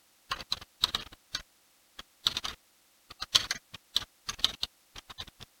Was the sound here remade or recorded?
recorded